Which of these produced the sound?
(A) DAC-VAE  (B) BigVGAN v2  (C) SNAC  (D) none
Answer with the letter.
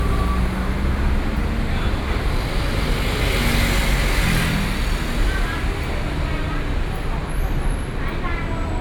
D